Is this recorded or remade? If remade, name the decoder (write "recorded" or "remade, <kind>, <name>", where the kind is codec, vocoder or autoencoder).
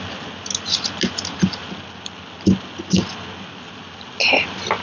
recorded